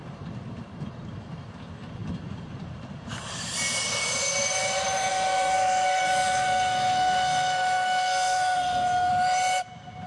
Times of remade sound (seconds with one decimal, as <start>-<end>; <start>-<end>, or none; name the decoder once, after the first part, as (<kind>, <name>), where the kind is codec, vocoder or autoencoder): 5.1-9.1 (codec, SNAC)

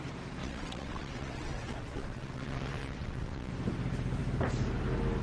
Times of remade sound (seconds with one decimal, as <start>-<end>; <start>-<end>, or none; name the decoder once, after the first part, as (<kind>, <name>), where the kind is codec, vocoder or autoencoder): 0.4-3.5 (vocoder, WaveNeXt)

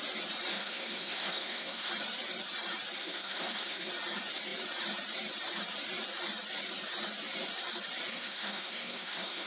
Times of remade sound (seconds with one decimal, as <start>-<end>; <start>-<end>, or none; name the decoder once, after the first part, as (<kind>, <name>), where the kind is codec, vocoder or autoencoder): 0.5-1.9 (codec, SNAC); 3.0-3.9; 8.1-9.5

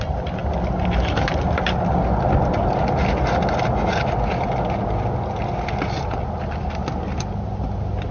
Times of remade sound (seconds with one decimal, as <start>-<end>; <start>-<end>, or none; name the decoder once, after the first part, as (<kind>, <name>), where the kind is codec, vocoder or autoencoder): none

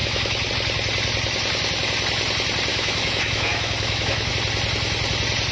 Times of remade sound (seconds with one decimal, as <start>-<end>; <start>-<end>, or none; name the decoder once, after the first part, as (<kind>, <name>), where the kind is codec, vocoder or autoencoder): 0.0-0.5 (autoencoder, DAC-VAE); 2.7-4.3

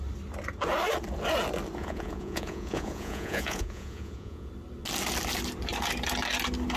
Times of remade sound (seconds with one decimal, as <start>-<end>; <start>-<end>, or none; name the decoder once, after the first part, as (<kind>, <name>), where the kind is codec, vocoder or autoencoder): 1.8-4.5 (vocoder, Vocos)

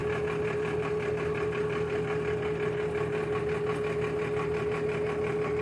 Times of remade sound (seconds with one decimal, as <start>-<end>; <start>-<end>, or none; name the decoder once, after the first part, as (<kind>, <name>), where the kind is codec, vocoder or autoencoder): none